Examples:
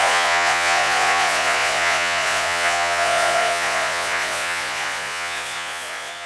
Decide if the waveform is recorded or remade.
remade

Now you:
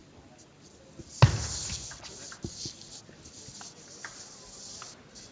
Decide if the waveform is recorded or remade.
recorded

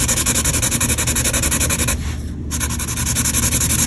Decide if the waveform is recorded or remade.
recorded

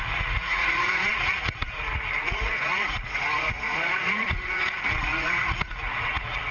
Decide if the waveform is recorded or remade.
remade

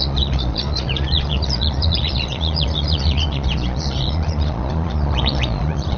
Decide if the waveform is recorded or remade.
remade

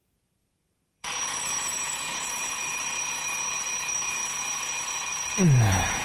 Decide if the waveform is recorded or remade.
remade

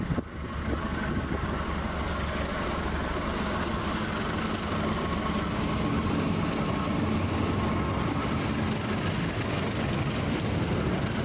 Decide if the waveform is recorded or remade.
recorded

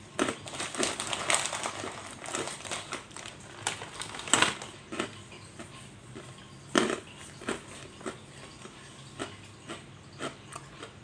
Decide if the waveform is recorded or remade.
recorded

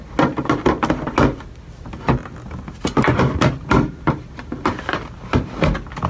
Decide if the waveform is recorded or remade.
recorded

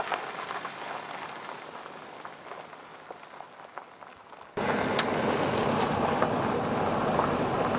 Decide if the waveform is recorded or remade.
recorded